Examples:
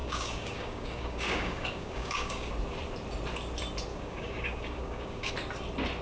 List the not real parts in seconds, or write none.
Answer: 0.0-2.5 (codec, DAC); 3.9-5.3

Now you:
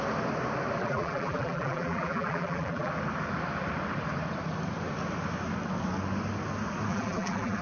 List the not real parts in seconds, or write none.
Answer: 0.8-2.9 (vocoder, BigVGAN v2); 6.9-7.6

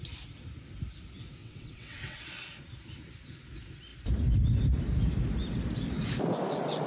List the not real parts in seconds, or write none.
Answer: 1.4-2.2 (vocoder, WaveNeXt)

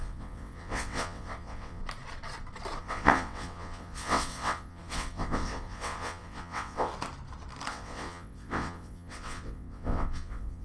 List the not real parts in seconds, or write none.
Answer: 0.0-1.8 (vocoder, WaveNeXt); 2.8-6.9; 7.7-10.6

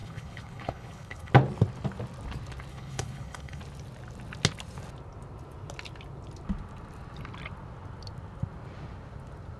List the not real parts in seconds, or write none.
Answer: 0.0-1.3 (codec, HILCodec); 2.7-3.6